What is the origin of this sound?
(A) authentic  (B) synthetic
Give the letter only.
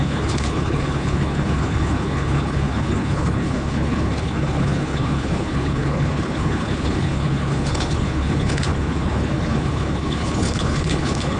B